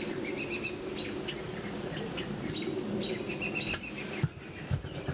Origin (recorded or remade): recorded